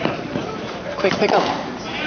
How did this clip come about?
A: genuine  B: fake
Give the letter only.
B